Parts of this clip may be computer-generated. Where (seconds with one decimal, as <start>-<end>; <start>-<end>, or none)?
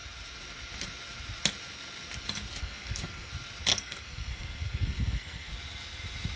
2.6-3.3; 3.7-5.5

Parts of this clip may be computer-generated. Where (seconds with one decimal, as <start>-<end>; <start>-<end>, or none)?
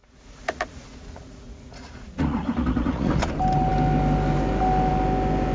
0.0-3.3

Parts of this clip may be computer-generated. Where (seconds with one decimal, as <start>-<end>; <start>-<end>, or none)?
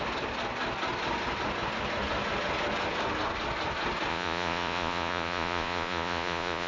4.1-6.7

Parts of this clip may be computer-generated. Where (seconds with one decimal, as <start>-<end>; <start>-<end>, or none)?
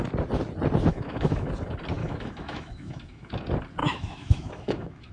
0.9-1.5; 2.0-3.3; 3.8-5.1